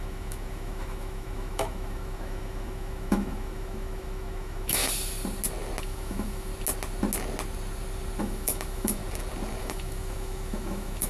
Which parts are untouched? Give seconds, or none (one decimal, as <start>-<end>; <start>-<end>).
4.8-5.8; 6.5-8.2; 9.0-9.6